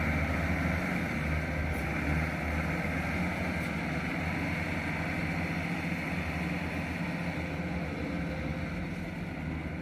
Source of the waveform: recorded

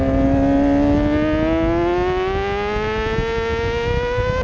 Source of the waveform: recorded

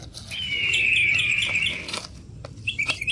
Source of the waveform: recorded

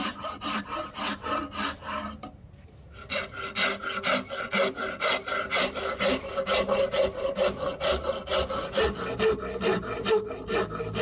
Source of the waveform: recorded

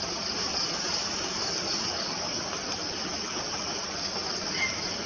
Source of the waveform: recorded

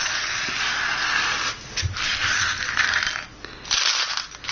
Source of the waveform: recorded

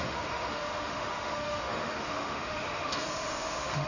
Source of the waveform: remade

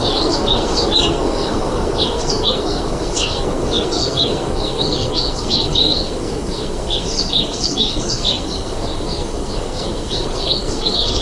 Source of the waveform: remade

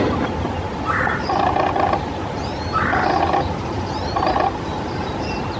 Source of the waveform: recorded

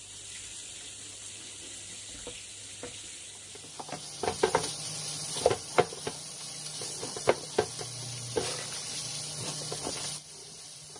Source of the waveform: remade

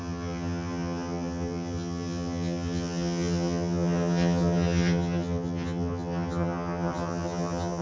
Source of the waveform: remade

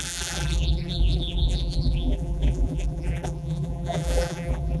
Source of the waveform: remade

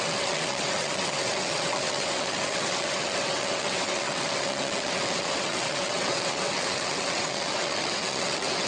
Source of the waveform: remade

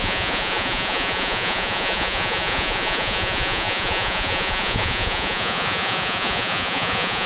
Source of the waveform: remade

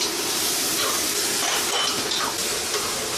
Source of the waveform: recorded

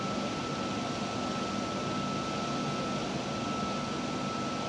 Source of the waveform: recorded